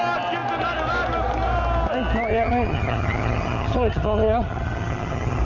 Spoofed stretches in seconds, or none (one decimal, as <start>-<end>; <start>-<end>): 2.3-5.4